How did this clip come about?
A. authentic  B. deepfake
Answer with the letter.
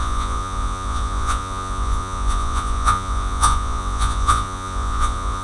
B